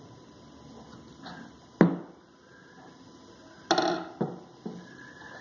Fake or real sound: real